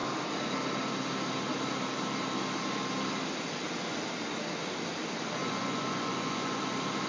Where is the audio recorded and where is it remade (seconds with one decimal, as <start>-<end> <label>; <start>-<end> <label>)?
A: 0.0-5.4 recorded; 5.4-6.6 remade; 6.6-7.1 recorded